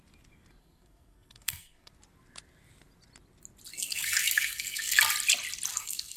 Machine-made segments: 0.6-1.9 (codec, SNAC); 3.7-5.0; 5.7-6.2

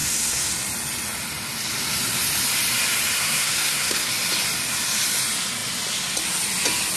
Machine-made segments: 0.0-0.5 (codec, SNAC); 3.2-4.1